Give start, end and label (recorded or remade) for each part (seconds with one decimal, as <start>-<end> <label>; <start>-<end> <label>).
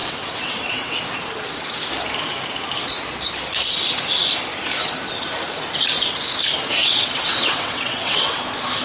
0.0-1.0 remade; 1.0-6.8 recorded; 6.8-8.4 remade; 8.4-8.8 recorded